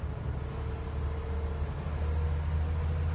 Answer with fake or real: real